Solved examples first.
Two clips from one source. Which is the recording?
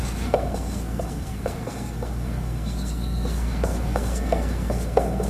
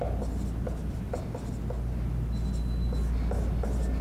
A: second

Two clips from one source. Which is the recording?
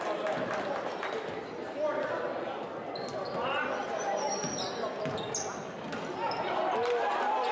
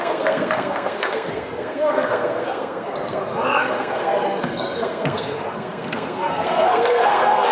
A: first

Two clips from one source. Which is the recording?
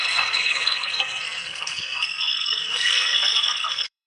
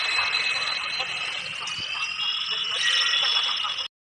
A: second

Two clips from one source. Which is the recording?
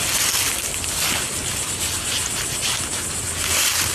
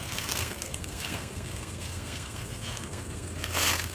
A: first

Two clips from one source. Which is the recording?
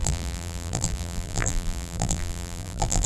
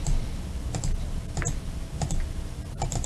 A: second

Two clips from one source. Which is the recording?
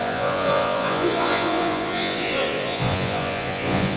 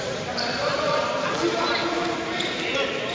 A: second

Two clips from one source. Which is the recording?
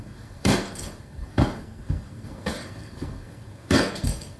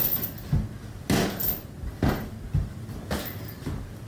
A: second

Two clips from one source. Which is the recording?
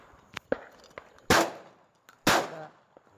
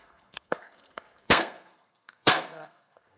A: first